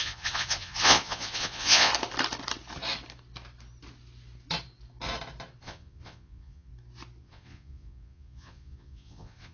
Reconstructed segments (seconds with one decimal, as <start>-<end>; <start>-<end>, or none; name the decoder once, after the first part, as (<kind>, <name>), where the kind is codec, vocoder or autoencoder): 0.0-1.9 (vocoder, Vocos); 5.6-6.7; 7.2-9.5